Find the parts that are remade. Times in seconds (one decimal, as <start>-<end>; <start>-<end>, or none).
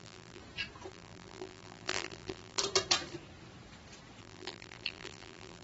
0.0-0.4; 0.9-2.6; 4.2-5.6